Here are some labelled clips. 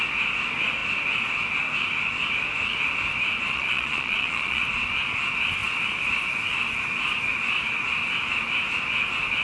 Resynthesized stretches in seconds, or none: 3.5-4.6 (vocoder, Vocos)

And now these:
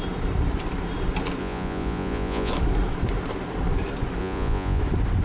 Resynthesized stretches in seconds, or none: 1.4-2.5 (vocoder, Vocos); 4.2-4.8

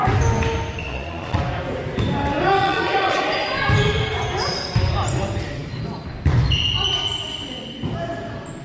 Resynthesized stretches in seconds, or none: 0.8-1.4 (vocoder, Vocos); 2.6-3.2